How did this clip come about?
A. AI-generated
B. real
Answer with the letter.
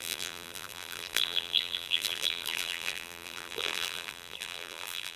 A